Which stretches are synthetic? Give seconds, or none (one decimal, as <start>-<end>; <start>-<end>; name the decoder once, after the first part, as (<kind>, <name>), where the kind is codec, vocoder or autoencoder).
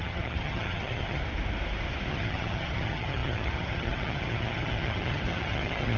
0.0-1.2 (vocoder, HiFi-GAN); 2.1-6.0